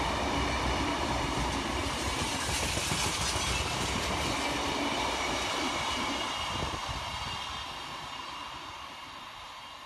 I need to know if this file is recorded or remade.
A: recorded